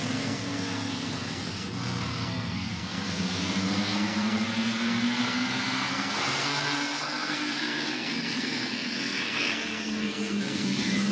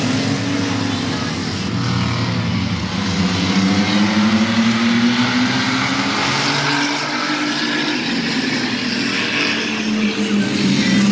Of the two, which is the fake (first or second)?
first